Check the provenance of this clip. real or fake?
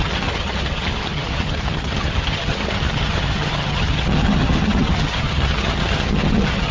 fake